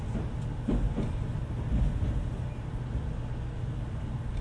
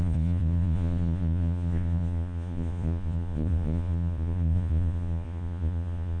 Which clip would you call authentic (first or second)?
first